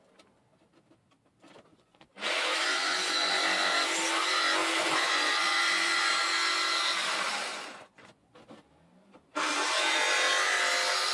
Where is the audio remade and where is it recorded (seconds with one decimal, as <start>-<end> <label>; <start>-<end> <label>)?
0.0-1.7 recorded; 1.7-3.3 remade; 3.3-4.8 recorded; 4.8-6.1 remade; 6.1-7.5 recorded; 7.5-8.3 remade; 8.3-11.1 recorded